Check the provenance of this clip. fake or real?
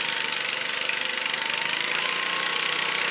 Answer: real